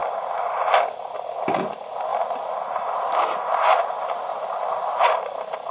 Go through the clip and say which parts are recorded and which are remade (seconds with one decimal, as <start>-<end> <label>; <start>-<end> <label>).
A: 0.0-2.1 recorded; 2.1-5.7 remade